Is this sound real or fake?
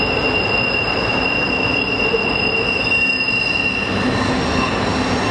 real